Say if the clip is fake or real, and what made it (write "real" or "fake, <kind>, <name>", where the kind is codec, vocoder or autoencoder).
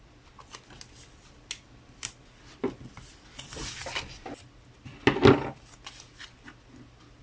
real